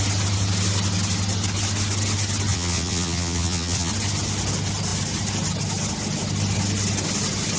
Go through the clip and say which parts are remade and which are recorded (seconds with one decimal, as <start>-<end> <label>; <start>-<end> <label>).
0.0-2.5 recorded; 2.5-3.9 remade; 3.9-7.6 recorded